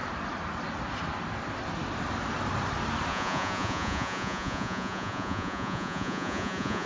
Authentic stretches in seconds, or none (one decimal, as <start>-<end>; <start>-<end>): 0.0-3.1